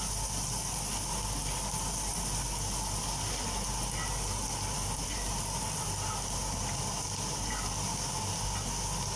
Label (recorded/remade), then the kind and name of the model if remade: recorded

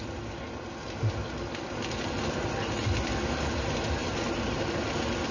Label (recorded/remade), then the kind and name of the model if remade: recorded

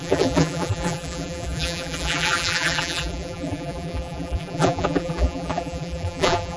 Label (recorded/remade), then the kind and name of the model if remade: remade, vocoder, BigVGAN v2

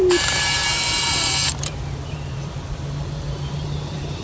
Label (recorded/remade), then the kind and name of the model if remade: remade, vocoder, BigVGAN v2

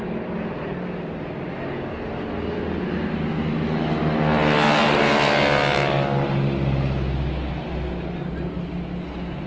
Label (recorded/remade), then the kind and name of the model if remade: recorded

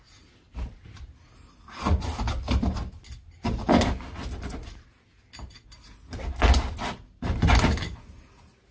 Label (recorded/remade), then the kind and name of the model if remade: recorded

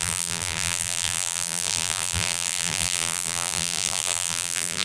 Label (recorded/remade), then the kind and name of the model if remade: remade, vocoder, BigVGAN v2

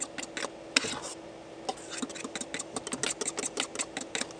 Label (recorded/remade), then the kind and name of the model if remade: recorded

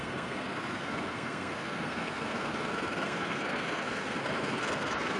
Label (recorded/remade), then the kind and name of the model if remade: remade, codec, SNAC